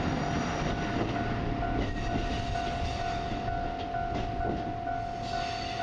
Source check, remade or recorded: recorded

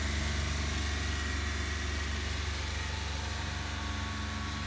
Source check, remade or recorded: recorded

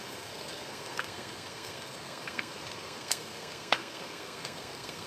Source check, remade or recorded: remade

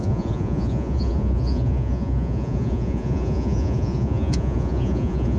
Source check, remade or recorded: remade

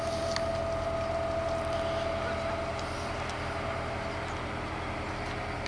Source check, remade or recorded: recorded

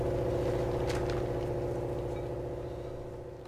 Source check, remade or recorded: recorded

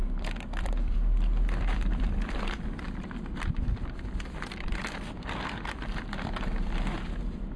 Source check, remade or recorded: remade